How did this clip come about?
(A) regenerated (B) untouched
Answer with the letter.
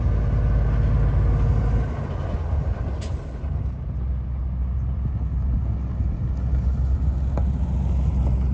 B